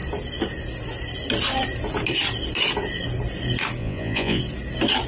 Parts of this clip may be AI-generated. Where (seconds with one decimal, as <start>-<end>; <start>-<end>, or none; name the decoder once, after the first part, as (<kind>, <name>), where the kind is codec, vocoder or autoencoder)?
3.8-4.4 (vocoder, Vocos)